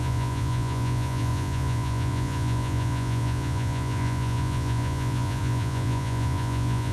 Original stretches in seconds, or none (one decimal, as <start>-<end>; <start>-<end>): none